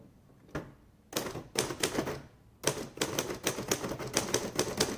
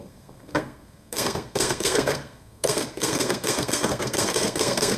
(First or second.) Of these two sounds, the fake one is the second